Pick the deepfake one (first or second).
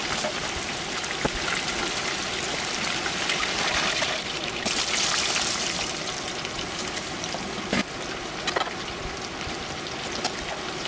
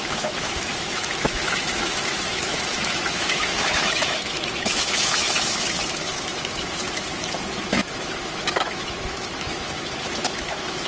second